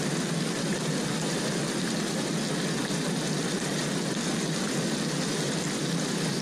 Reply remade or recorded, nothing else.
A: recorded